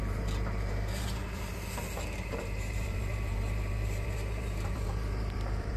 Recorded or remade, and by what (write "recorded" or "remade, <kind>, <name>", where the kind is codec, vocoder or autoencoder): remade, vocoder, BigVGAN v2